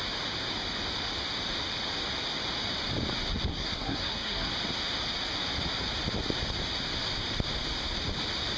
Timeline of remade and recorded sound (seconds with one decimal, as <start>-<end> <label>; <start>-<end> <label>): 0.0-3.5 recorded; 3.5-4.5 remade; 4.5-8.6 recorded